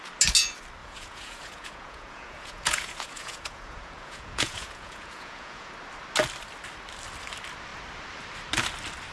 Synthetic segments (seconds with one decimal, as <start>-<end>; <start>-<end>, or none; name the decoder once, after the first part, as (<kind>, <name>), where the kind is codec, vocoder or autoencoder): 0.8-5.7 (vocoder, Vocos)